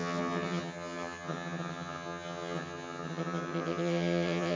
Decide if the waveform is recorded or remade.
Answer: remade